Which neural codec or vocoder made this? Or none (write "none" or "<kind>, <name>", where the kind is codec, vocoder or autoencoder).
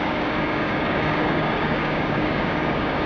codec, DAC